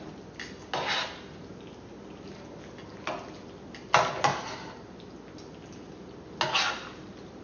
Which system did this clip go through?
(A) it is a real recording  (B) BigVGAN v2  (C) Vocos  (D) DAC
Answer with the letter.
A